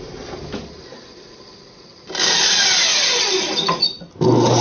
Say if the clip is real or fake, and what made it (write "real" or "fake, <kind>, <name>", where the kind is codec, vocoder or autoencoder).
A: real